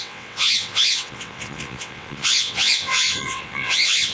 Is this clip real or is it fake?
fake